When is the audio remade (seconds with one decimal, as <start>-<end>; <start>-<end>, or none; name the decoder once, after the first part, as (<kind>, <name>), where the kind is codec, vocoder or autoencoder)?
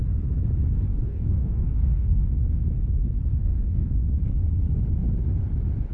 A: 0.9-2.2 (codec, DAC); 3.4-3.9